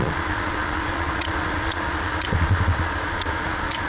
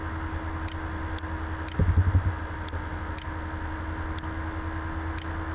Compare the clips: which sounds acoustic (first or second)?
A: second